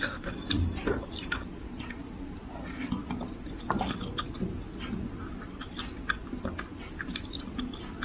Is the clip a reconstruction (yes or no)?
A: yes